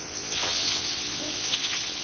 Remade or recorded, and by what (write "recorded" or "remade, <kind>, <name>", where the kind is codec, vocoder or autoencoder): remade, vocoder, WaveNeXt